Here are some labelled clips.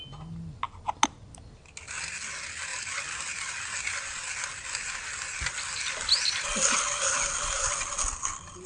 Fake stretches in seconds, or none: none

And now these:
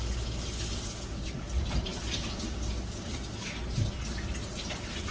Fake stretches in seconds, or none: none